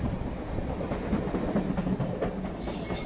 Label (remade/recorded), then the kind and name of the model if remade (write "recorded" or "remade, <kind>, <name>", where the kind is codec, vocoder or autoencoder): recorded